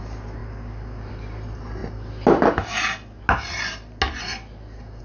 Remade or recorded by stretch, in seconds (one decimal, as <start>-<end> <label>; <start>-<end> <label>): 0.0-5.0 recorded